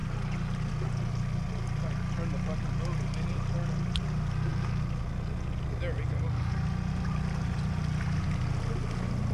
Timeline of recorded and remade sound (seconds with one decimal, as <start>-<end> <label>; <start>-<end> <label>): 0.0-9.3 recorded